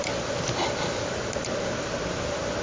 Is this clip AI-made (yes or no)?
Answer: no